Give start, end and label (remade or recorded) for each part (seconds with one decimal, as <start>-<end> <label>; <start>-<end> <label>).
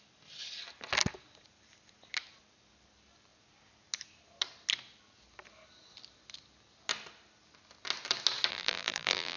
0.0-8.5 recorded; 8.5-9.4 remade